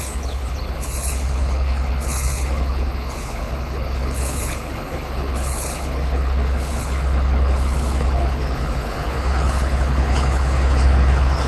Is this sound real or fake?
fake